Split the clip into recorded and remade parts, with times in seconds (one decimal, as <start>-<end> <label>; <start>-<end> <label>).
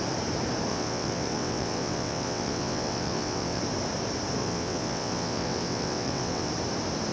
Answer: 0.0-0.7 recorded; 0.7-3.6 remade; 3.6-4.4 recorded; 4.4-6.5 remade; 6.5-7.1 recorded